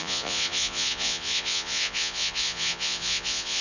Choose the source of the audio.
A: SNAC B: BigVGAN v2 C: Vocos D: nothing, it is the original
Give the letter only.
C